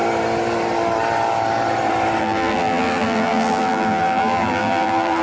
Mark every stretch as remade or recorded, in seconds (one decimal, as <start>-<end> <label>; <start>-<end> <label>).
0.0-2.2 recorded; 2.2-5.2 remade